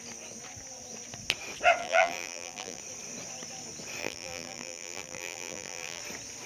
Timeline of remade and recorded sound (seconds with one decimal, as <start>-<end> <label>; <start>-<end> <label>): 0.0-1.8 recorded; 1.8-2.8 remade; 2.8-4.0 recorded; 4.0-6.0 remade; 6.0-6.5 recorded